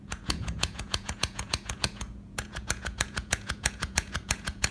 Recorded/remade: remade